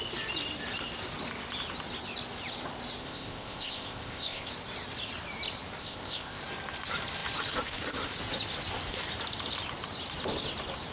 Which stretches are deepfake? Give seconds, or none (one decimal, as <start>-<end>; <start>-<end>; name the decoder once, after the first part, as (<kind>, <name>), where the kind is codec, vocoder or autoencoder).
3.0-4.5 (codec, ZipCodec); 5.8-6.4